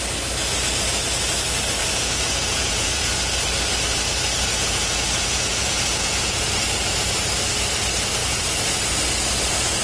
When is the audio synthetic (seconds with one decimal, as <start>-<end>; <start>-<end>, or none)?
1.8-3.1; 4.5-6.4; 8.2-8.8